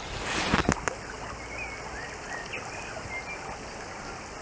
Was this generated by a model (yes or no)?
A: no